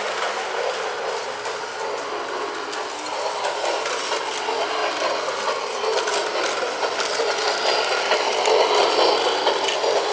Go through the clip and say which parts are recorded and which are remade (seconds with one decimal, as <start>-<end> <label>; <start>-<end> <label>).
0.0-10.1 recorded